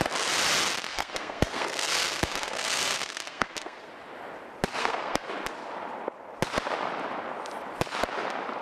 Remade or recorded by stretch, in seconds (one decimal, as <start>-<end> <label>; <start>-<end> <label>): 0.0-0.9 recorded; 0.9-3.9 remade; 3.9-4.8 recorded; 4.8-5.3 remade; 5.3-8.6 recorded